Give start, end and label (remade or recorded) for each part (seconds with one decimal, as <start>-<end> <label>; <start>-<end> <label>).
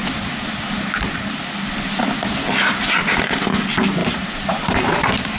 0.0-4.0 recorded; 4.0-5.4 remade